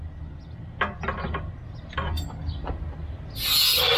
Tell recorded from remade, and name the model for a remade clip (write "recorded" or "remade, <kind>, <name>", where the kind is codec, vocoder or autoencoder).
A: recorded